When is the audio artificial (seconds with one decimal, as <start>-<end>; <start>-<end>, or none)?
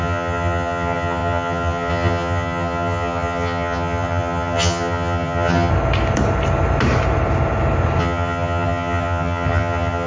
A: 0.0-5.7; 8.0-10.1